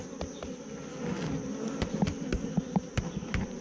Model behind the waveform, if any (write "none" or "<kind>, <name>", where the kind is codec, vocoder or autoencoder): none